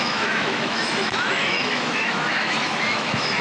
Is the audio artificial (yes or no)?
yes